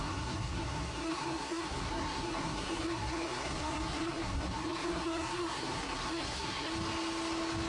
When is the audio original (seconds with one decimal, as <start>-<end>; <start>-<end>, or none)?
6.7-7.7